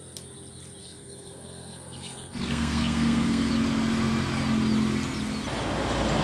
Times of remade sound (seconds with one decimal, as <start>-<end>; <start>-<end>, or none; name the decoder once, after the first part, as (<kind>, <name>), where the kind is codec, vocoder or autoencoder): 0.8-3.5 (codec, SNAC)